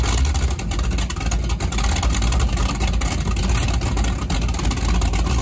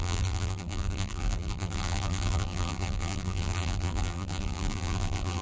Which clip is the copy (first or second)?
second